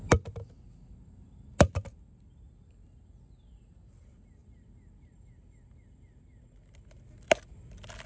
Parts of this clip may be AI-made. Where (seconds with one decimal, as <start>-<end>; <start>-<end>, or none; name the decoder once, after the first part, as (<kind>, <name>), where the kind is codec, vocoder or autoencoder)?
none